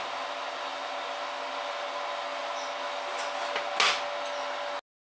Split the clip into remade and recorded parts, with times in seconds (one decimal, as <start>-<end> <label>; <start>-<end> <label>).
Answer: 0.0-5.1 recorded